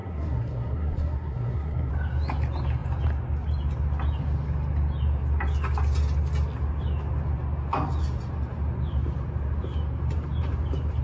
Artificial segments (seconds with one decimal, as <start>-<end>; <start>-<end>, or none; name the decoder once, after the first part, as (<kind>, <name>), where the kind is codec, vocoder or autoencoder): 0.0-1.9 (codec, SNAC)